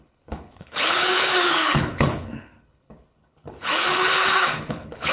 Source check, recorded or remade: remade